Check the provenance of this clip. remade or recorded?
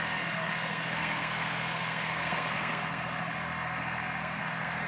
remade